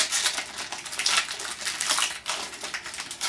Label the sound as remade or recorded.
recorded